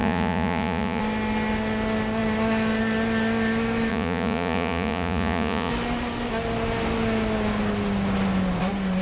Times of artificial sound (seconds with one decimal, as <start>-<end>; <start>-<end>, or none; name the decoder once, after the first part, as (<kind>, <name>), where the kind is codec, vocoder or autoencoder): 0.0-1.0 (vocoder, Vocos); 3.9-5.7